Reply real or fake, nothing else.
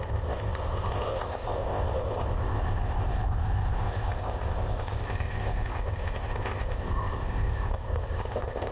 fake